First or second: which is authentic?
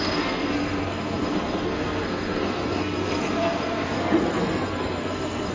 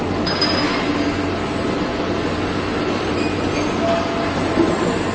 second